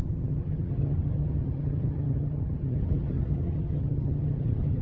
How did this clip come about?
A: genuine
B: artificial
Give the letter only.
B